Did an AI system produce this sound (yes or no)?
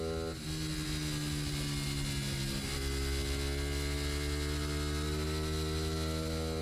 no